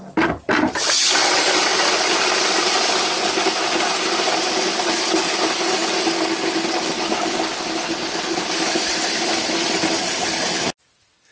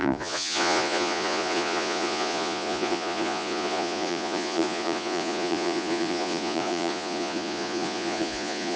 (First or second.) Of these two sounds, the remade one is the second